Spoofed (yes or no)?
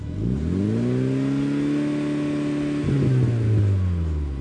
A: no